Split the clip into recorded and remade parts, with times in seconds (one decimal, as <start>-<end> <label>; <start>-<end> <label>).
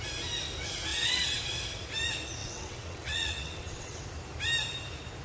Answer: 0.0-0.9 recorded; 0.9-1.4 remade; 1.4-2.4 recorded; 2.4-4.0 remade; 4.0-5.2 recorded